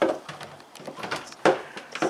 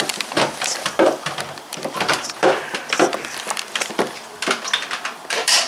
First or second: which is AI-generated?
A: second